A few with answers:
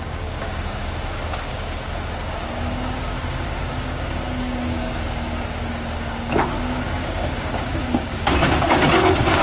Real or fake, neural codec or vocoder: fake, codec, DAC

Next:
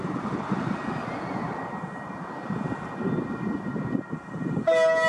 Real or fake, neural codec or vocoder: real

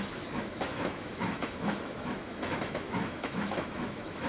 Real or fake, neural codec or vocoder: fake, autoencoder, DAC-VAE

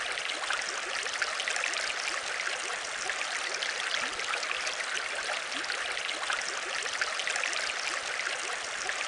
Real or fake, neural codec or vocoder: real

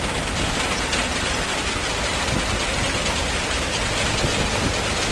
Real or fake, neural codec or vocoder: real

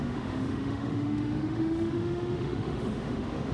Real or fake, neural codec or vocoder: fake, autoencoder, DAC-VAE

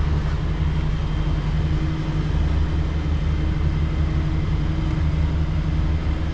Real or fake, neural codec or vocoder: real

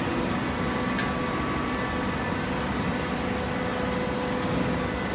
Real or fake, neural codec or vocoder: real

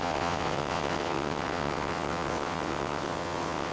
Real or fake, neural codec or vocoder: fake, vocoder, WaveNeXt